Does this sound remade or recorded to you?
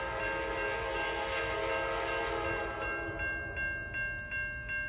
recorded